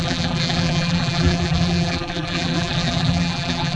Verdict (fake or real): fake